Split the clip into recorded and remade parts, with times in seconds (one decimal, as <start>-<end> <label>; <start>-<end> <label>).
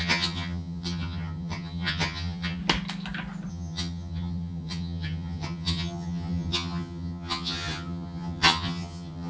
0.0-2.6 remade; 2.6-3.5 recorded; 3.5-9.3 remade